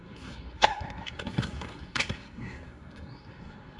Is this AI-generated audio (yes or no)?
yes